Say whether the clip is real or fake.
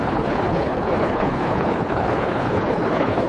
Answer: fake